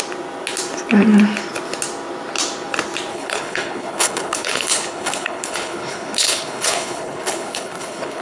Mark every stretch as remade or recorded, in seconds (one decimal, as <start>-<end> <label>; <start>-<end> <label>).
0.0-3.1 recorded; 3.1-8.2 remade